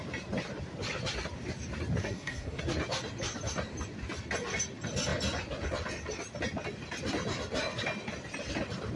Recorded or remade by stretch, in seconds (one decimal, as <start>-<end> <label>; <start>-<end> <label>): 0.0-2.0 recorded; 2.0-2.6 remade; 2.6-9.0 recorded